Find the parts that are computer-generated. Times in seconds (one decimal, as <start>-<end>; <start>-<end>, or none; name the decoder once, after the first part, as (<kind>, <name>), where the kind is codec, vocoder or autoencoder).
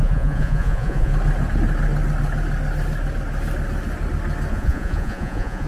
0.0-1.1 (vocoder, Vocos); 4.5-5.7